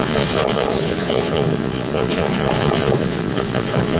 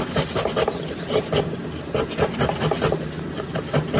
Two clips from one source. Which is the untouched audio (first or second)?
second